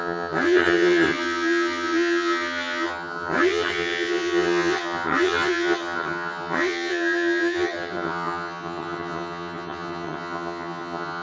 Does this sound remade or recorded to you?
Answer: remade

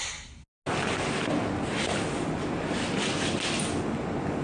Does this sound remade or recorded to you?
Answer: recorded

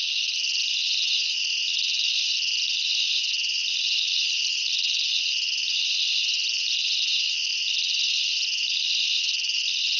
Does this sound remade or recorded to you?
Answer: recorded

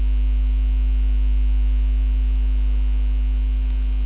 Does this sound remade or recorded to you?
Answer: recorded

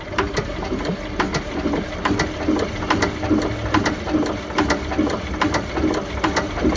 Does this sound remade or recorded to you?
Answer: recorded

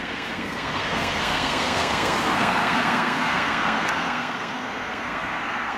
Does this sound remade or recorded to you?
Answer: remade